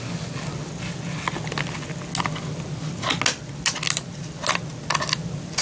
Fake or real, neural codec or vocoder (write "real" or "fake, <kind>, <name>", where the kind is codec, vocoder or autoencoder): real